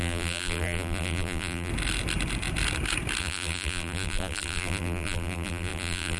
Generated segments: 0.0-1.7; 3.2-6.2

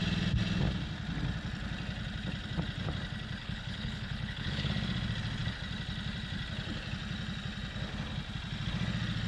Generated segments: 3.4-4.7